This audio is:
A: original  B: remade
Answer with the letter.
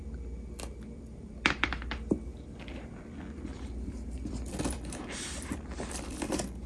B